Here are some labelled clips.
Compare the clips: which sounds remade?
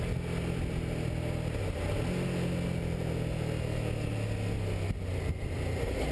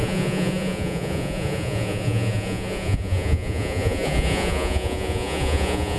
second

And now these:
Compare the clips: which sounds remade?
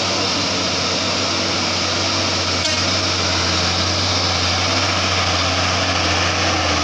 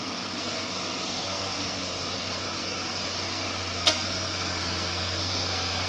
second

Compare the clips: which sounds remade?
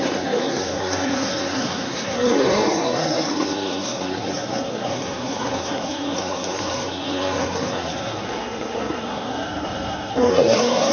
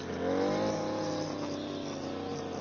first